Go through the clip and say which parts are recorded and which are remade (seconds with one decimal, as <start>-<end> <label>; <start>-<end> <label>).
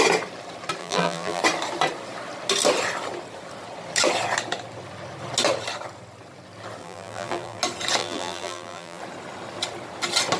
0.0-0.8 recorded; 0.8-1.4 remade; 1.4-6.8 recorded; 6.8-7.6 remade; 7.6-8.0 recorded; 8.0-9.0 remade; 9.0-10.4 recorded